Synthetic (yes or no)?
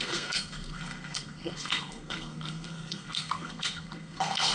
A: yes